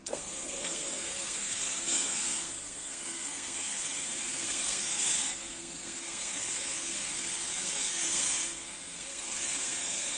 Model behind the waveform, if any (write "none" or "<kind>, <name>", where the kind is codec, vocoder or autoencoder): codec, SNAC